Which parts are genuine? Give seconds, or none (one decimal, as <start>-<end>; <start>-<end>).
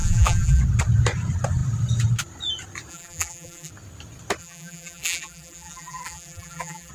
0.6-2.9; 3.7-4.4